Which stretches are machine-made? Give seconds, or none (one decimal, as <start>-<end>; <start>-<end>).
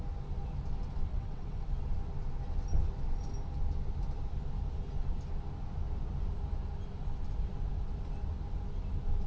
1.1-1.7